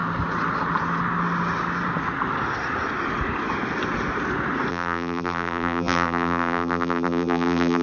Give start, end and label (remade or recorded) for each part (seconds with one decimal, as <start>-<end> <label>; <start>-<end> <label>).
0.0-4.7 recorded; 4.7-7.8 remade

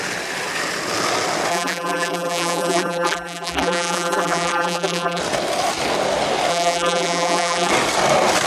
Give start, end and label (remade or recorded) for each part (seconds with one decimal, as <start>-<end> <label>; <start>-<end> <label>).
0.0-1.5 recorded; 1.5-5.2 remade; 5.2-6.5 recorded; 6.5-7.7 remade; 7.7-8.5 recorded